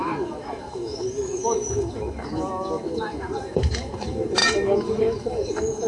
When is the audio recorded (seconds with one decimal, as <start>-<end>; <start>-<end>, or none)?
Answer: none